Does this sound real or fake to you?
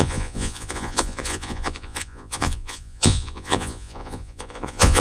fake